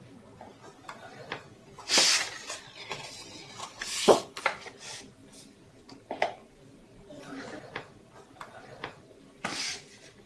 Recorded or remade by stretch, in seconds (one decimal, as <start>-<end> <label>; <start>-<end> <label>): 0.0-3.6 recorded; 3.6-4.4 remade; 4.4-10.3 recorded